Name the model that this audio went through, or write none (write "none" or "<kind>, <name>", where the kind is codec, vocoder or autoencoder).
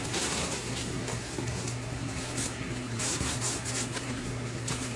codec, SNAC